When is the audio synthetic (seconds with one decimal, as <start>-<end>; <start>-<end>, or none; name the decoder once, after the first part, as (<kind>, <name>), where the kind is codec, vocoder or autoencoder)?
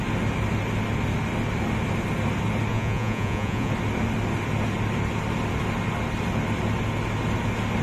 2.7-3.7 (vocoder, Vocos)